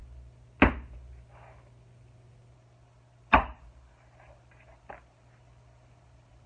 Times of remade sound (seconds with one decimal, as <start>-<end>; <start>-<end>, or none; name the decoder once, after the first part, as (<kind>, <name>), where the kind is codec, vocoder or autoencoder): none